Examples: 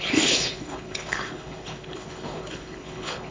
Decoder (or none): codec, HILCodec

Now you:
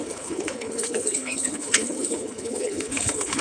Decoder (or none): codec, HILCodec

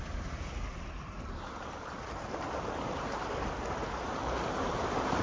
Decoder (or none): none